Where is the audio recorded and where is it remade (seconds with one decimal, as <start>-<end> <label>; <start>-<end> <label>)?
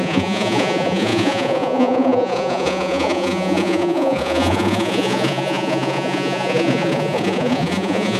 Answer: 0.0-8.2 remade